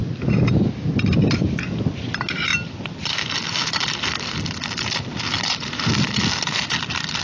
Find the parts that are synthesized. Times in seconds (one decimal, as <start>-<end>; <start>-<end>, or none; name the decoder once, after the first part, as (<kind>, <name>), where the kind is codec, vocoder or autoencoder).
none